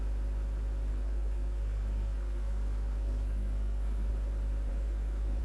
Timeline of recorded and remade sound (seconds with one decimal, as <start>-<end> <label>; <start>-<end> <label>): 0.0-0.9 recorded; 0.9-4.1 remade; 4.1-4.7 recorded; 4.7-5.4 remade